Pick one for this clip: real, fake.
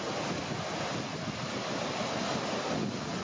real